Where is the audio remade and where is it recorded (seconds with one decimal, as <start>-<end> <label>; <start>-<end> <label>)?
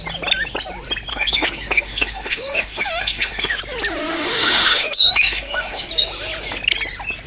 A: 0.0-1.1 recorded; 1.1-3.6 remade; 3.6-4.0 recorded; 4.0-5.9 remade; 5.9-7.3 recorded